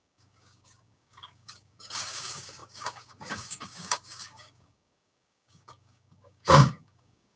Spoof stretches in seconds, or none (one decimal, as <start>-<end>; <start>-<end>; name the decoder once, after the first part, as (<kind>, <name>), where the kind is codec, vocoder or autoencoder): 0.0-7.4 (codec, DAC)